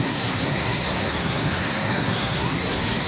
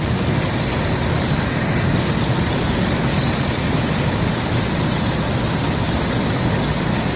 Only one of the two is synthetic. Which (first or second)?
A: first